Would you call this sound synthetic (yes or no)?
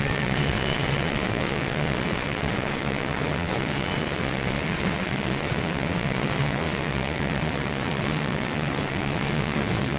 yes